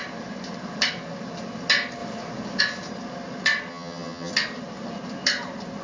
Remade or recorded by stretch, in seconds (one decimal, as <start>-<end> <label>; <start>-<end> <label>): 0.0-3.7 recorded; 3.7-4.3 remade; 4.3-5.8 recorded